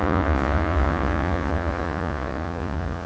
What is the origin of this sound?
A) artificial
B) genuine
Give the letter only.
A